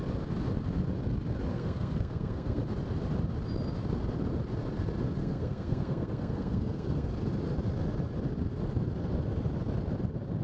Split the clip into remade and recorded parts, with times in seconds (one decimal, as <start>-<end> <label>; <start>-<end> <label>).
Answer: 0.0-1.5 recorded; 1.5-2.6 remade; 2.6-5.2 recorded; 5.2-7.1 remade; 7.1-10.4 recorded